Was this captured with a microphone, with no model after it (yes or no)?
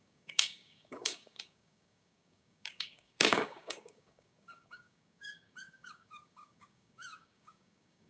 no